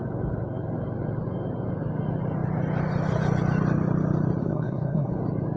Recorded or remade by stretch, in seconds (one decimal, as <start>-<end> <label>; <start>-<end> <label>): 0.0-4.4 recorded; 4.4-5.1 remade; 5.1-5.6 recorded